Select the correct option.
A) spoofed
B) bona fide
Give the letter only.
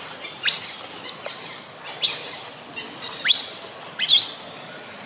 B